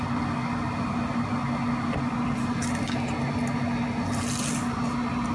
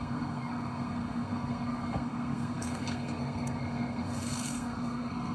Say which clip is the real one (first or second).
first